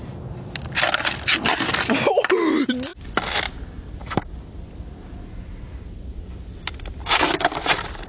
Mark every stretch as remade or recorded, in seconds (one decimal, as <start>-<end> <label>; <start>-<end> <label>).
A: 0.0-8.1 recorded